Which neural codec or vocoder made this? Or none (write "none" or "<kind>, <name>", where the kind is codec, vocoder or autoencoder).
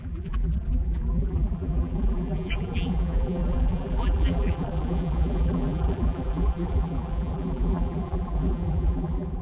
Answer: vocoder, BigVGAN v2